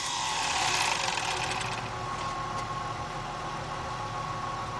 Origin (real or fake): real